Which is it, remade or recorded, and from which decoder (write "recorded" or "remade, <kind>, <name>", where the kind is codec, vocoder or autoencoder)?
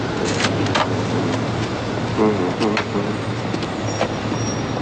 recorded